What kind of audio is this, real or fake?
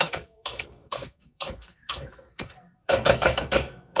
fake